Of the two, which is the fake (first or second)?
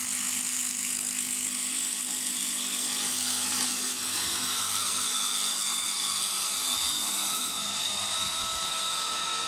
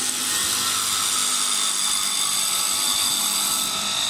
first